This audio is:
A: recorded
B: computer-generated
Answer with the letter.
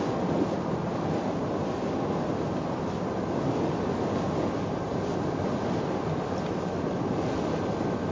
A